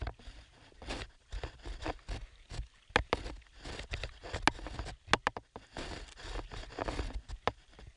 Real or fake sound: real